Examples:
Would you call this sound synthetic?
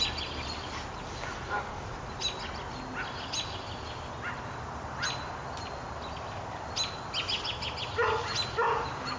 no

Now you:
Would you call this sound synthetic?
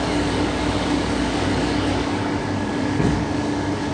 yes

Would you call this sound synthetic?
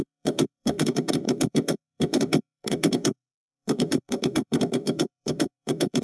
yes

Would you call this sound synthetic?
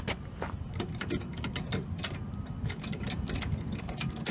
no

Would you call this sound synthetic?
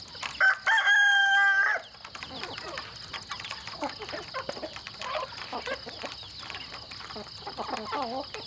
no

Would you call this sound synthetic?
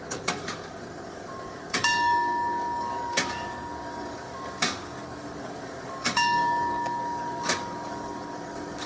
yes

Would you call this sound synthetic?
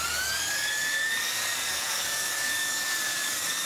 yes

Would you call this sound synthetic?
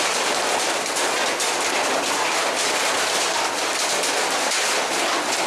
no